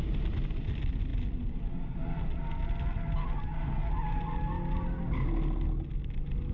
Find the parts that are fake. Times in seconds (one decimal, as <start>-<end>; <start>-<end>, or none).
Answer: none